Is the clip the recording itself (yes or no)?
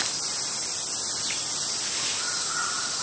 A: yes